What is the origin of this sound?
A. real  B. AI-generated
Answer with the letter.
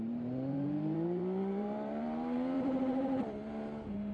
B